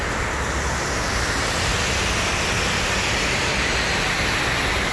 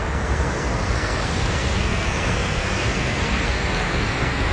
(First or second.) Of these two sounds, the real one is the first